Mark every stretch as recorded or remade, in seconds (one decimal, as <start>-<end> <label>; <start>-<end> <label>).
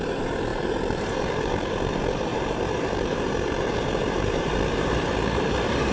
0.0-0.5 recorded; 0.5-1.9 remade; 1.9-2.3 recorded; 2.3-5.9 remade